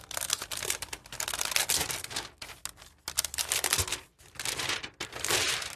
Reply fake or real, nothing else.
real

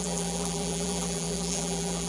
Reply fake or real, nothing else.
fake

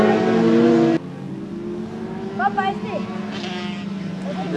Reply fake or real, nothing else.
real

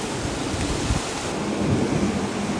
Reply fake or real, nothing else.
real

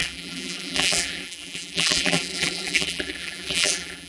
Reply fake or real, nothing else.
fake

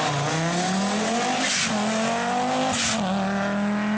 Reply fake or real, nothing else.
real